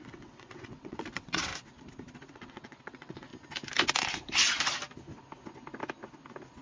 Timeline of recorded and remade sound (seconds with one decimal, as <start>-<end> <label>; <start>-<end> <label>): 0.0-1.5 remade; 1.5-2.3 recorded; 2.3-3.3 remade; 3.3-6.6 recorded